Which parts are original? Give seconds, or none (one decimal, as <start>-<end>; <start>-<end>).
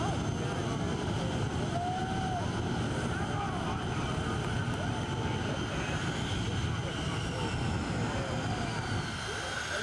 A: 0.0-9.8